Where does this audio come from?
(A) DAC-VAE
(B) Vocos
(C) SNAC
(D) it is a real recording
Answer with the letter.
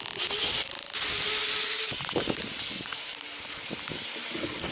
D